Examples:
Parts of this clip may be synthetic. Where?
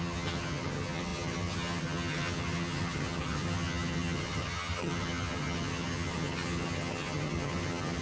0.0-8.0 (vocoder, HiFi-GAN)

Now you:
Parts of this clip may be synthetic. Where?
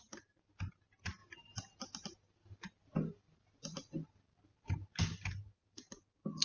none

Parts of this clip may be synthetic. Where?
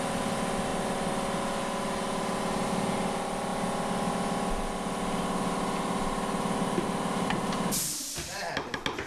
none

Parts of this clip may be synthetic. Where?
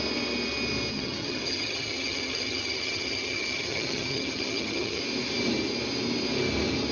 0.9-5.0 (vocoder, HiFi-GAN)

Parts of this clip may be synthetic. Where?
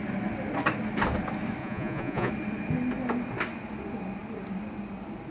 1.6-2.3 (vocoder, Vocos)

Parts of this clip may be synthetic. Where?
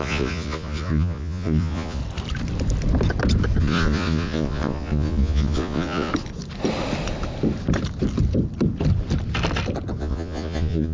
0.0-2.0 (vocoder, Vocos); 3.6-6.1; 10.0-10.9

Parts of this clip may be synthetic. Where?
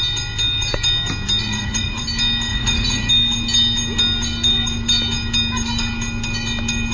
1.4-2.0 (vocoder, Vocos); 2.5-3.1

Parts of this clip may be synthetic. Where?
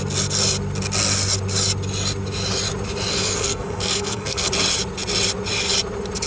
3.1-4.5 (codec, SNAC)